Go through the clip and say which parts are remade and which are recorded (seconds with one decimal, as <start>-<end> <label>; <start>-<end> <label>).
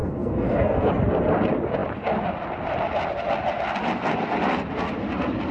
0.0-0.9 remade; 0.9-5.5 recorded